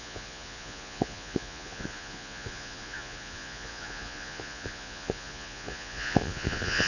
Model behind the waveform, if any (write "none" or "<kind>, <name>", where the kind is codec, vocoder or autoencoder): vocoder, Vocos